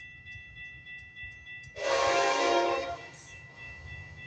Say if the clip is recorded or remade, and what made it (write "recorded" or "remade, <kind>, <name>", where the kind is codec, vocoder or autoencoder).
remade, autoencoder, DAC-VAE